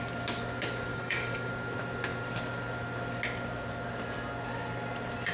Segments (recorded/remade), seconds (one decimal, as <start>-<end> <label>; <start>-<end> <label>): 0.0-0.9 recorded; 0.9-1.5 remade; 1.5-5.3 recorded